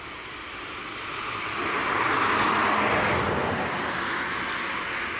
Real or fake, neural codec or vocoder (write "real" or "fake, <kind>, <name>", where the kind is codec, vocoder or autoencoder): real